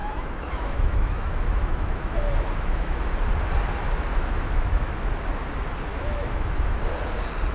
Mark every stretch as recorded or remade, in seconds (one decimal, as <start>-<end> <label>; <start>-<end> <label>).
0.0-3.0 remade; 3.0-4.1 recorded; 4.1-5.0 remade; 5.0-5.9 recorded; 5.9-6.8 remade; 6.8-7.5 recorded